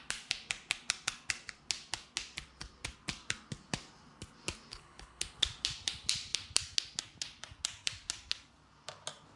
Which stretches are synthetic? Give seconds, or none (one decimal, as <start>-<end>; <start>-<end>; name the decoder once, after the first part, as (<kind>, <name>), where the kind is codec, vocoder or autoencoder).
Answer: 4.7-5.2 (codec, HILCodec)